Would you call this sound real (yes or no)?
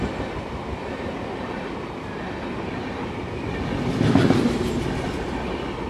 yes